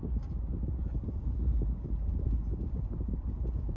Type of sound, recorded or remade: recorded